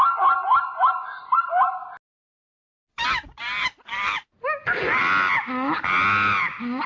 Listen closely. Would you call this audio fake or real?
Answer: real